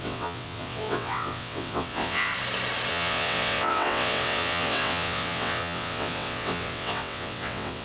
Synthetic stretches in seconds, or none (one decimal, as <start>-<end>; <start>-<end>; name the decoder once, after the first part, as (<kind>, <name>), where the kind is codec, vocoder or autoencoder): 0.0-2.3 (vocoder, WaveNeXt); 2.9-7.8